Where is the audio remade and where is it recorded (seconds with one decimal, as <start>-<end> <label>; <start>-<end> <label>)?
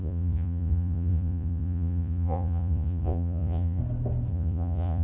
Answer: 0.0-3.8 remade; 3.8-4.3 recorded; 4.3-5.0 remade